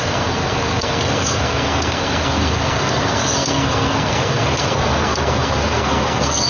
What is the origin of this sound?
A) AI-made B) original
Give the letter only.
A